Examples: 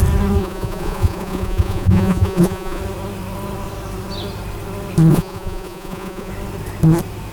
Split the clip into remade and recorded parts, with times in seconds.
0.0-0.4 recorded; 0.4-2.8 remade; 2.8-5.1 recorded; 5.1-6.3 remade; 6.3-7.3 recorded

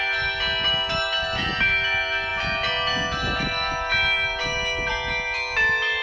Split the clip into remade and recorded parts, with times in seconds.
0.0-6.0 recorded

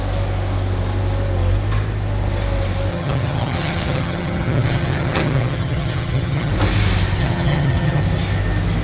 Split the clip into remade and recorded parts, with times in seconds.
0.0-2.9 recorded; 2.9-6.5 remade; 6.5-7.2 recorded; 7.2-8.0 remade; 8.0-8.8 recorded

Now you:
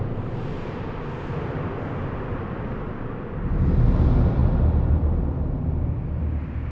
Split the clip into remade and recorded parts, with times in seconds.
0.0-6.7 recorded

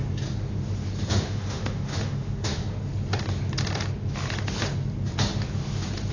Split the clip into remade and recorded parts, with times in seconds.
0.0-1.1 recorded; 1.1-2.6 remade; 2.6-6.1 recorded

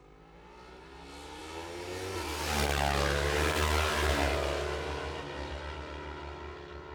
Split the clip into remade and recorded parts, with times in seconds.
0.0-6.9 recorded

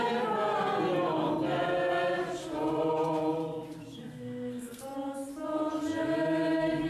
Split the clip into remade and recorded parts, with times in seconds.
0.0-4.0 recorded; 4.0-4.8 remade; 4.8-6.9 recorded